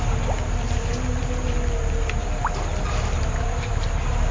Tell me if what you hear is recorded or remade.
recorded